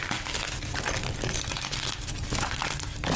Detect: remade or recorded recorded